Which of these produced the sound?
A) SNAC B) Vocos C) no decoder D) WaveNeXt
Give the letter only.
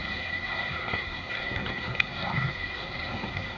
A